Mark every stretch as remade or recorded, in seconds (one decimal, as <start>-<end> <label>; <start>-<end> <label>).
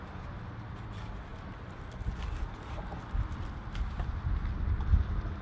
0.0-5.4 recorded